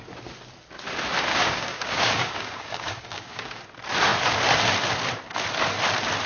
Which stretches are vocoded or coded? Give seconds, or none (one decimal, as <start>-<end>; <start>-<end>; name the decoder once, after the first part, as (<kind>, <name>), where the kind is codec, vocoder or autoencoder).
1.3-3.6 (codec, DAC)